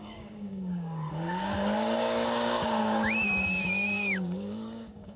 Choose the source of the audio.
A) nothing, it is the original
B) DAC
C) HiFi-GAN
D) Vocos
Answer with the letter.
B